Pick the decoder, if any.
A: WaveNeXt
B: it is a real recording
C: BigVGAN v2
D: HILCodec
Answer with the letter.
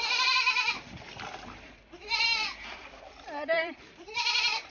C